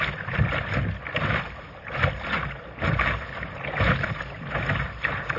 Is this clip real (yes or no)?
yes